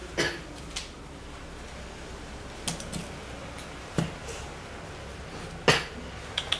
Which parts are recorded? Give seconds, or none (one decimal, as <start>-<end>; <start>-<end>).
0.0-6.6